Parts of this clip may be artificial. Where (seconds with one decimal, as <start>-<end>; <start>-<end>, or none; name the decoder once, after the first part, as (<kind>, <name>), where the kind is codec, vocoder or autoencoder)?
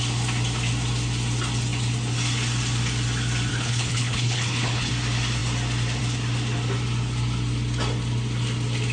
3.5-4.9 (codec, HILCodec)